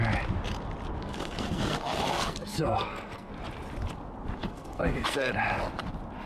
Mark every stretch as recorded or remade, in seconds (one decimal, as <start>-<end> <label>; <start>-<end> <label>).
0.0-1.0 recorded; 1.0-3.3 remade; 3.3-4.4 recorded; 4.4-5.3 remade; 5.3-6.3 recorded